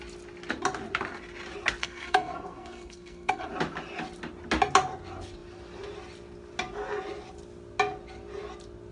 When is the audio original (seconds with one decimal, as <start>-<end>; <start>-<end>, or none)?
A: 0.0-1.8; 3.5-8.9

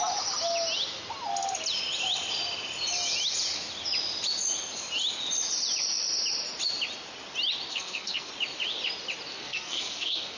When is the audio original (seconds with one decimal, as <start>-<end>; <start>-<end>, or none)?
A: 0.0-7.7; 8.3-9.3

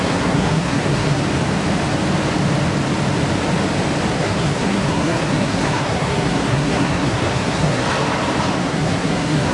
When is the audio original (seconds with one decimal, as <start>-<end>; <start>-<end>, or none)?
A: 1.2-4.1; 7.8-8.6

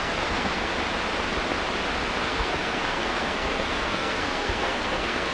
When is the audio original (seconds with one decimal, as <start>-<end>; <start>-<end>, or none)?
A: 0.7-2.2

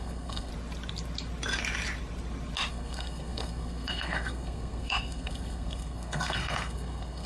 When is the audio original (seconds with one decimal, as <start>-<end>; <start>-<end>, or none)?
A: 0.5-2.7

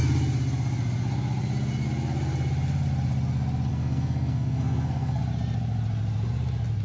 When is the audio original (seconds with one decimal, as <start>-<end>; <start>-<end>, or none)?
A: 0.0-3.7; 5.2-6.8

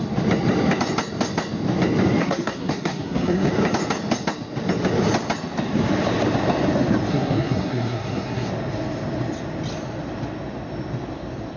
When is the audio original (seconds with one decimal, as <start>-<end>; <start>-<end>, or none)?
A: 0.0-2.2; 3.5-7.1; 8.5-11.6

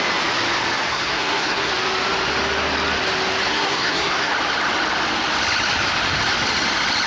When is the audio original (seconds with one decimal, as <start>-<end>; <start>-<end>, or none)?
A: 0.0-0.9; 1.7-3.5; 4.3-7.1